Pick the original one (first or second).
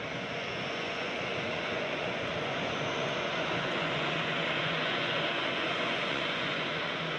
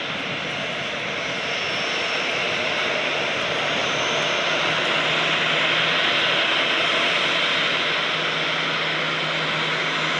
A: second